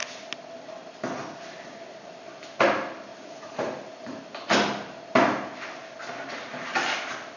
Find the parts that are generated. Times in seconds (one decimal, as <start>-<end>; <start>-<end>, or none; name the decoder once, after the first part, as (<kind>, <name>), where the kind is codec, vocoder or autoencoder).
3.1-4.2 (vocoder, Vocos)

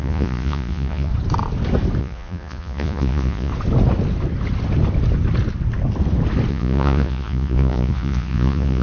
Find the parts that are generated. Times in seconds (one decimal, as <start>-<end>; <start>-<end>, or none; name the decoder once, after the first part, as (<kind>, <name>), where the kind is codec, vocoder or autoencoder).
0.0-1.1 (vocoder, Vocos); 2.0-3.5; 6.5-8.8

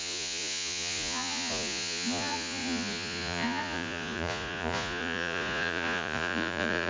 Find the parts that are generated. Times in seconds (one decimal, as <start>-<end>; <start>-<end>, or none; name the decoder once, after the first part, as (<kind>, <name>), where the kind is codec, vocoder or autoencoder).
0.0-6.9 (vocoder, Vocos)

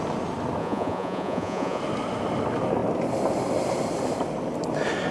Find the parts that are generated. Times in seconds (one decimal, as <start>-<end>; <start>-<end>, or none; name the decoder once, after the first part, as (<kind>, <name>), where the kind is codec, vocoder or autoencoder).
0.6-1.8 (vocoder, Vocos)